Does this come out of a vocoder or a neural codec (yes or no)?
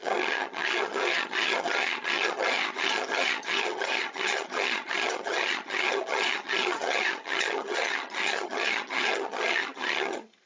yes